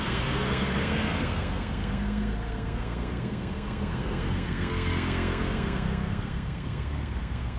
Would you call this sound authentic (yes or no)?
no